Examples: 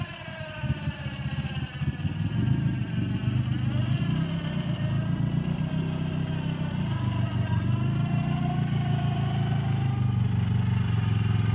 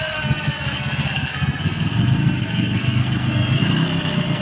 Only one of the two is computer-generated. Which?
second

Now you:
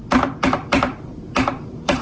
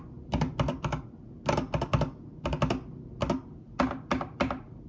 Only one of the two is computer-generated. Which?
first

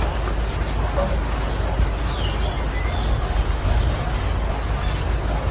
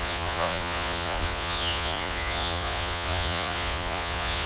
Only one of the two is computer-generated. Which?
second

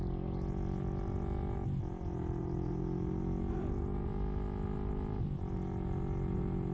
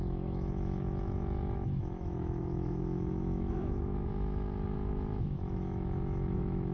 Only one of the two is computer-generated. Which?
second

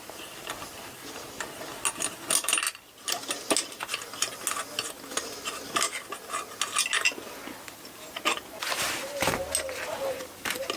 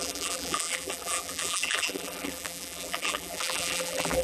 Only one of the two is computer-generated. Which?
second